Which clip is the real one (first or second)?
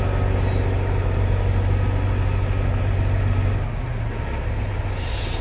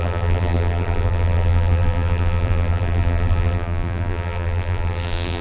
first